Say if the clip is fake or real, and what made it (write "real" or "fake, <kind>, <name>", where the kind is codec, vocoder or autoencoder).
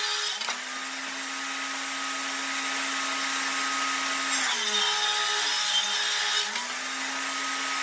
real